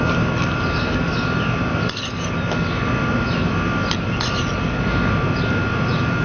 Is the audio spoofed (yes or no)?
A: yes